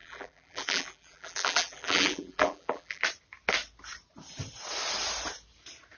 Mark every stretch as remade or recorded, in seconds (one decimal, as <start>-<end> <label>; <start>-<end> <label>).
0.0-3.0 remade; 3.0-6.0 recorded